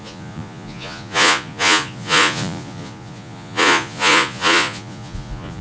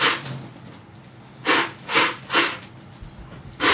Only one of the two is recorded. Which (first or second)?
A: second